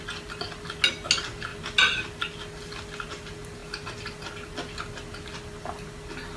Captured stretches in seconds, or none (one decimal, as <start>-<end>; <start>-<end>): 0.0-6.4